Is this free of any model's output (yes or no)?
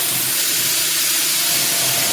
yes